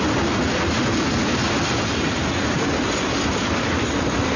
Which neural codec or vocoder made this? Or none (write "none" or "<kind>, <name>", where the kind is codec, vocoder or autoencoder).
none